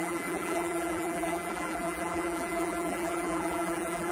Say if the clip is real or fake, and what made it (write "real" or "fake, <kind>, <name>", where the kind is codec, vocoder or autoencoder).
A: fake, vocoder, BigVGAN v2